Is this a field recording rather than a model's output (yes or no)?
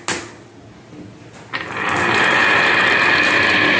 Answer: yes